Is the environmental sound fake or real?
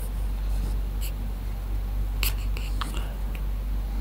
real